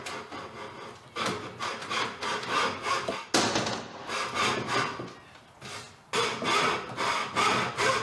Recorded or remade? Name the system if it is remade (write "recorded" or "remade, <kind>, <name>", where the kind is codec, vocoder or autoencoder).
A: recorded